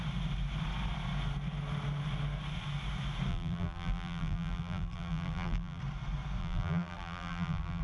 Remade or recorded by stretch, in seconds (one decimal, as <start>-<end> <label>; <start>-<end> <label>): 0.0-3.3 recorded; 3.3-5.8 remade; 5.8-6.4 recorded; 6.4-7.8 remade

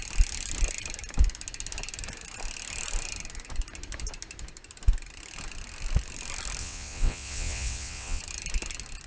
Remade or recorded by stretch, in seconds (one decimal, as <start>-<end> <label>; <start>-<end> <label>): 0.0-6.6 recorded; 6.6-8.2 remade; 8.2-9.1 recorded